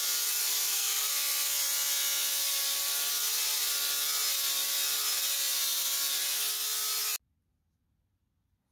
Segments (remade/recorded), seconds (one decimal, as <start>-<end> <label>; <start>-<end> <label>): 0.0-0.4 recorded; 0.4-1.1 remade; 1.1-8.7 recorded